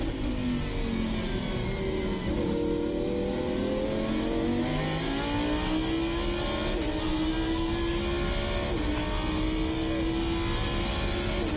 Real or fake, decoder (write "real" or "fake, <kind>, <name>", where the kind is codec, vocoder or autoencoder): real